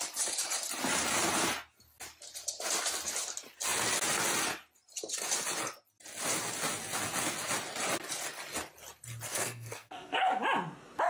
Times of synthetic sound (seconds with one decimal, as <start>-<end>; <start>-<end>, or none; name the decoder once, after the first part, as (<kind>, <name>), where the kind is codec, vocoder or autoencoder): 9.3-10.4 (codec, SNAC)